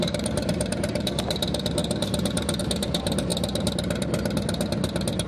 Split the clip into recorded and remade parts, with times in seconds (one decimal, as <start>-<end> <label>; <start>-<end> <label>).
0.0-3.3 remade; 3.3-5.3 recorded